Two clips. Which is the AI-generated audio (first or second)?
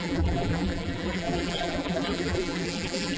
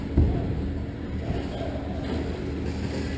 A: first